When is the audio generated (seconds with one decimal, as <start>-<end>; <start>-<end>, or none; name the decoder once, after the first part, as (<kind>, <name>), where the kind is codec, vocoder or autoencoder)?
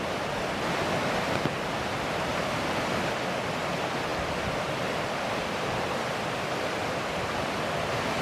2.3-2.9 (vocoder, BigVGAN v2)